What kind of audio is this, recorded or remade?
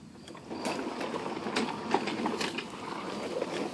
recorded